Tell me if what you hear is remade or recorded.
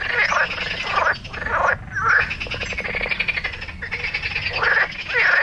recorded